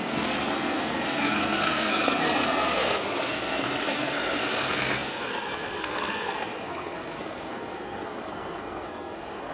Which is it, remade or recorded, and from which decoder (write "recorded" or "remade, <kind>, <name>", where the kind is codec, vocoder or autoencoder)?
remade, codec, SNAC